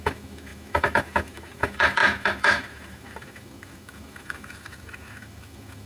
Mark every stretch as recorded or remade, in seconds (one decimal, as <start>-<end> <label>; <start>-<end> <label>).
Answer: 0.0-5.9 remade